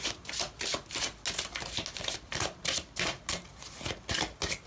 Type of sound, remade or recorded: recorded